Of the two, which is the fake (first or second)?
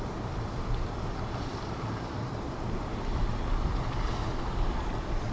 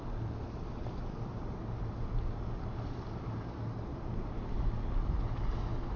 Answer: first